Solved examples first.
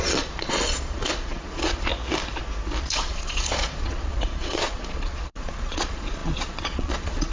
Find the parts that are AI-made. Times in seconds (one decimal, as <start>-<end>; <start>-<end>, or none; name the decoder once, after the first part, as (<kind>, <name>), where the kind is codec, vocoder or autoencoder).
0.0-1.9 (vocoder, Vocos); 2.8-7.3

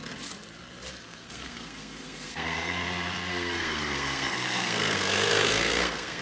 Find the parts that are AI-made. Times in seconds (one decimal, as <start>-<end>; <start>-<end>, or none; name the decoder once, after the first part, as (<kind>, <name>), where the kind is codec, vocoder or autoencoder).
0.9-2.8 (codec, SNAC); 3.3-6.2

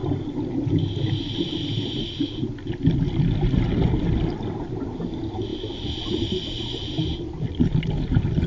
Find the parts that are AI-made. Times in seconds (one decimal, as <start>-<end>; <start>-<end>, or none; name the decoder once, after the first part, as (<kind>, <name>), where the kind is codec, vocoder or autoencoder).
none